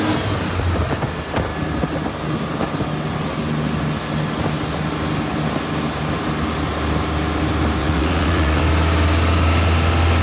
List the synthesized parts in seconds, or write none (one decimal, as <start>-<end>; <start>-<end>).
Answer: 7.8-8.6